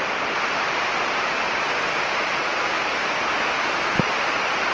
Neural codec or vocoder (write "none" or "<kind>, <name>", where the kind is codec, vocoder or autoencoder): none